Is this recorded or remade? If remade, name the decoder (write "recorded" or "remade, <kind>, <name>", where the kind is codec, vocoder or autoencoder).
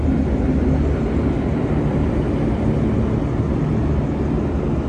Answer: recorded